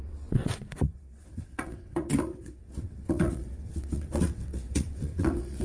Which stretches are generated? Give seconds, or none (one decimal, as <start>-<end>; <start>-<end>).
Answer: 0.0-5.6